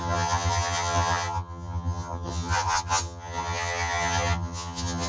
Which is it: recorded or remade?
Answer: remade